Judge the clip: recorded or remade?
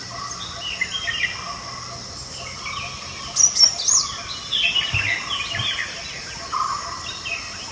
recorded